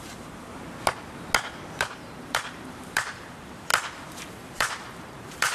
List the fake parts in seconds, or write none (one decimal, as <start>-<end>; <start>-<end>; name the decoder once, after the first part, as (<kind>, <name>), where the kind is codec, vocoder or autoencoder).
0.0-0.5 (vocoder, BigVGAN v2); 1.8-3.7; 4.3-5.5